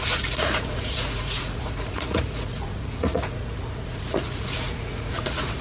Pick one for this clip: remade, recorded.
remade